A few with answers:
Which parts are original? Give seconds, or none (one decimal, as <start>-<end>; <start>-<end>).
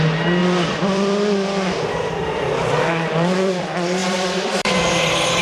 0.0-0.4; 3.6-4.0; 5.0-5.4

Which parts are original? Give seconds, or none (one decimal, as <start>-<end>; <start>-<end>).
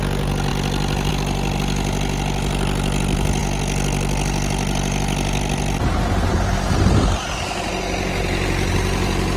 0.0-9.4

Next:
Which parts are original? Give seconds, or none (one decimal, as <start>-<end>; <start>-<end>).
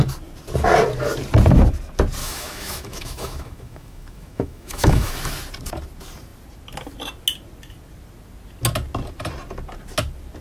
0.0-2.2; 5.1-10.4